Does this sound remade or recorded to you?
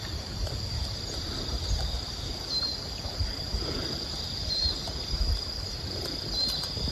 recorded